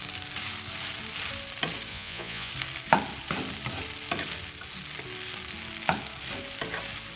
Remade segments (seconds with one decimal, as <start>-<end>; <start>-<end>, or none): 1.9-2.5